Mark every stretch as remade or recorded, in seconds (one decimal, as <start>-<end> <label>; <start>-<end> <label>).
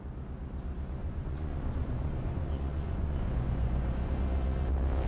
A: 0.0-1.0 recorded; 1.0-4.1 remade; 4.1-5.1 recorded